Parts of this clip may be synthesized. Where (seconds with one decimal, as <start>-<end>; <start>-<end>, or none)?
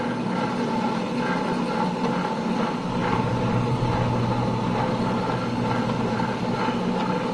3.0-4.1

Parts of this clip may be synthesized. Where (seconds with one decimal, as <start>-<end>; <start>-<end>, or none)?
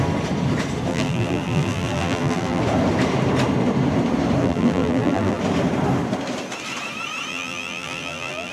0.9-2.6; 4.4-5.4; 7.3-8.5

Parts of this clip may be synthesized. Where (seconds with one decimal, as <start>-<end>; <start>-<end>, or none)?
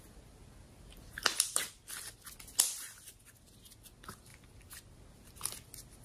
none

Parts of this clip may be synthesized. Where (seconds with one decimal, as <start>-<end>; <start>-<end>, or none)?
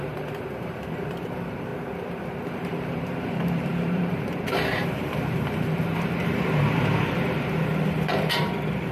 0.0-1.7; 2.5-8.9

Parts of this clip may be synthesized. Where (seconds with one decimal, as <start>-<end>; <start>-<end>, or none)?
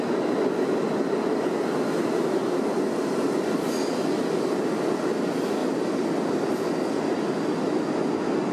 none